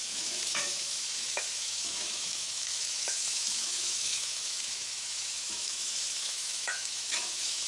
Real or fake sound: fake